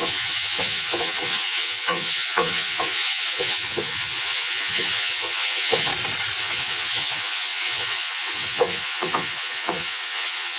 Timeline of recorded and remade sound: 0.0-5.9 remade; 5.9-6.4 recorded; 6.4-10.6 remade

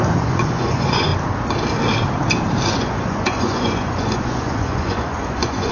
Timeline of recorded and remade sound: 0.0-1.1 remade; 1.1-2.7 recorded; 2.7-5.7 remade

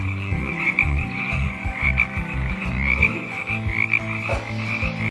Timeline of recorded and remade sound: 0.0-1.9 remade; 1.9-2.5 recorded; 2.5-3.4 remade; 3.4-5.1 recorded

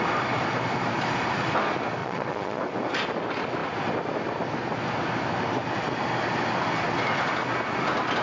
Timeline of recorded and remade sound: 0.0-2.0 recorded; 2.0-2.6 remade; 2.6-8.2 recorded